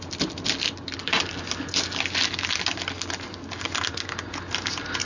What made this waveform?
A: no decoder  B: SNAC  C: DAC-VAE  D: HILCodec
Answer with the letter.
A